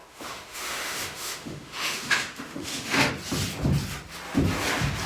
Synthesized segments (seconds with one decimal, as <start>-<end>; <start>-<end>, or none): 0.0-3.1